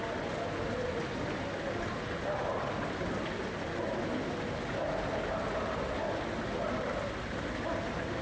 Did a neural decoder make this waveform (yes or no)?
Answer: no